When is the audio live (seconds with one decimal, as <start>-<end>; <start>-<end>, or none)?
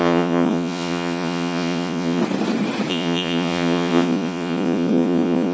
2.2-2.9